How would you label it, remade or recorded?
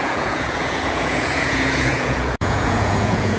remade